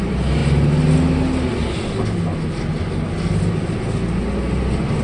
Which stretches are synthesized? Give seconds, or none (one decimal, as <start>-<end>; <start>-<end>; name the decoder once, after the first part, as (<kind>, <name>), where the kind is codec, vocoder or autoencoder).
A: none